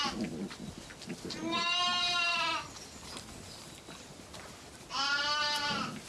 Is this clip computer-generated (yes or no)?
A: no